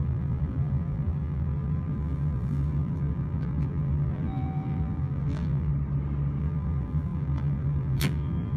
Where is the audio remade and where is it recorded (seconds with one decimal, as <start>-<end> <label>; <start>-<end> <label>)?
0.0-5.7 remade; 5.7-6.4 recorded; 6.4-8.6 remade